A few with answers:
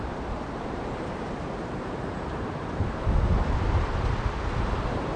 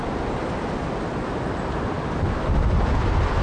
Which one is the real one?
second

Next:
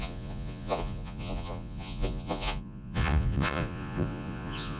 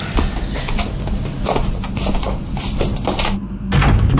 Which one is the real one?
second